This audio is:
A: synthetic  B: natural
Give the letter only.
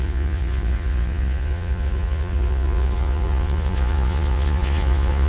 A